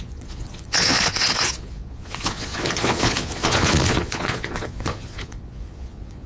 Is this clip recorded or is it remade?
remade